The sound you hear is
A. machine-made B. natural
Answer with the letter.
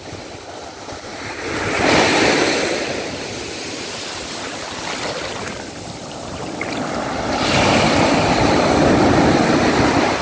B